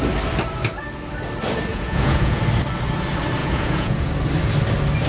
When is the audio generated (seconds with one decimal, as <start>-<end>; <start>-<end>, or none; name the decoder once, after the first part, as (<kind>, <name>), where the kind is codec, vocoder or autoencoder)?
1.7-2.4 (vocoder, Vocos); 3.4-4.1